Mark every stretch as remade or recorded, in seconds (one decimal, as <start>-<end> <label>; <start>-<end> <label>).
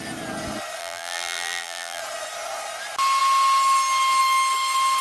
0.0-0.8 recorded; 0.8-2.0 remade; 2.0-5.0 recorded